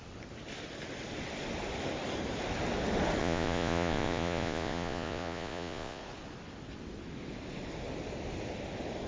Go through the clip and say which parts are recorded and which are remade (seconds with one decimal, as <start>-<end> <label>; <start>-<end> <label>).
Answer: 0.0-3.2 recorded; 3.2-6.0 remade; 6.0-9.1 recorded